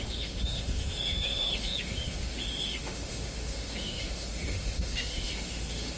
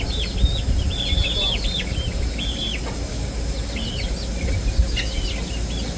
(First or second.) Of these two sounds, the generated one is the first